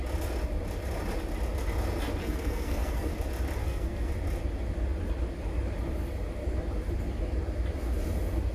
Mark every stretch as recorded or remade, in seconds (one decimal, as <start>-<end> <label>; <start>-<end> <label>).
0.0-2.2 recorded; 2.2-3.1 remade; 3.1-3.6 recorded; 3.6-4.1 remade; 4.1-8.5 recorded